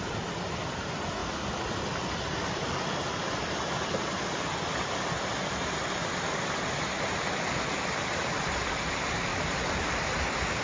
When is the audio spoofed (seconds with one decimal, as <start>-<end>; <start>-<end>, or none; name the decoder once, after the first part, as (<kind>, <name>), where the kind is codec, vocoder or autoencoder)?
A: 1.2-6.4 (vocoder, BigVGAN v2); 7.7-8.9